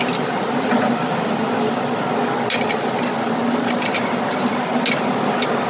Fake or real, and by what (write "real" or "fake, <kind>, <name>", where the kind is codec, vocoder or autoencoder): real